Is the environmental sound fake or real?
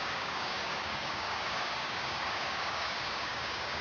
fake